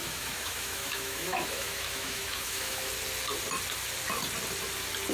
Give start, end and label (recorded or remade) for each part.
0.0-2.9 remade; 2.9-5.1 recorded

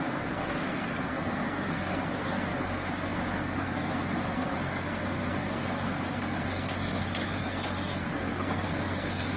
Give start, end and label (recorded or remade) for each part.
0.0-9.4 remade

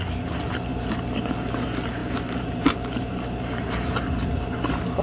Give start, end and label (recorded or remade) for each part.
0.0-2.0 recorded; 2.0-4.0 remade; 4.0-5.0 recorded